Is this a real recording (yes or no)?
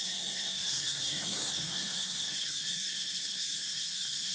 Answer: no